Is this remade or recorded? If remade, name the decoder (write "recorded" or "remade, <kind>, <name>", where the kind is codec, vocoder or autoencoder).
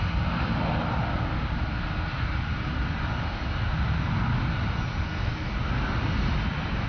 recorded